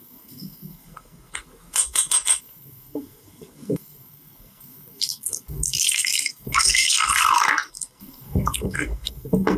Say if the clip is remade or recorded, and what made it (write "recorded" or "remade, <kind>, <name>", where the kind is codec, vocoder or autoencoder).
remade, codec, SNAC